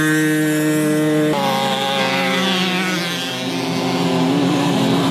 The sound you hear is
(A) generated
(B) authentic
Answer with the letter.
B